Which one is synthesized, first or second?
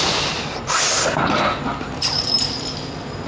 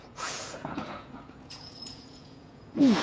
second